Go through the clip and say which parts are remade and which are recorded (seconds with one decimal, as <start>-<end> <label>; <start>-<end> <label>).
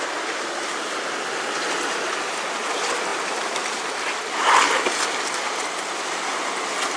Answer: 0.0-7.0 recorded